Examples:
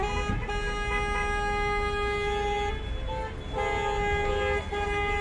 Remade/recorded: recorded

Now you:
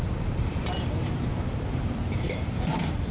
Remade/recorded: remade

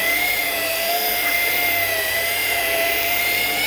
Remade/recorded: remade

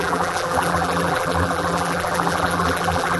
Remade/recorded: remade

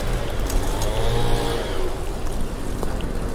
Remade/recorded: recorded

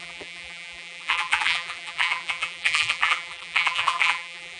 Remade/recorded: remade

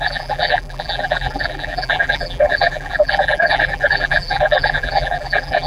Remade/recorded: remade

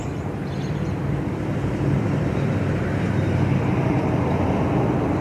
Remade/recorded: remade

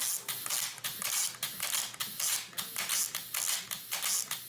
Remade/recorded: recorded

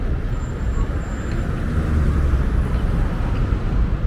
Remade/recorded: recorded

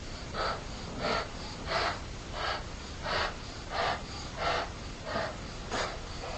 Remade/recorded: remade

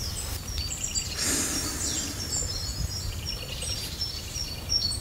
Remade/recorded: recorded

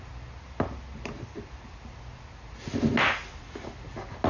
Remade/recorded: recorded